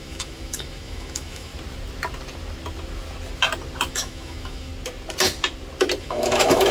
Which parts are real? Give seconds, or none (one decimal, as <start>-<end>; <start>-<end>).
1.5-3.9; 4.7-6.0